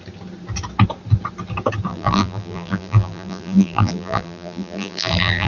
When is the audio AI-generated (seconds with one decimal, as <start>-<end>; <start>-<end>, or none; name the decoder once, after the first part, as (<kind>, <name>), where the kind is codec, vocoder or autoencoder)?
1.9-5.5 (vocoder, BigVGAN v2)